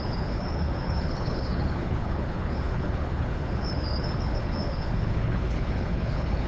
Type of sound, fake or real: fake